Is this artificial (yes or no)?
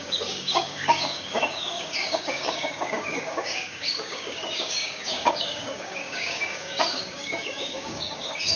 yes